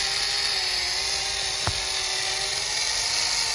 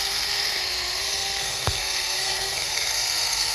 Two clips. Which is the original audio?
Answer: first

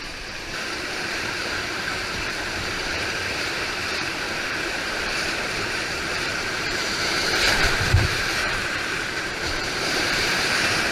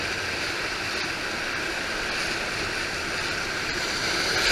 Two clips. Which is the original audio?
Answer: second